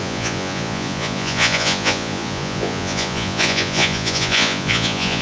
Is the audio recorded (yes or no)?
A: no